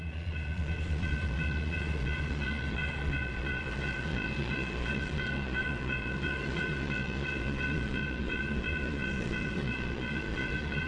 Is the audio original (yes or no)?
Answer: no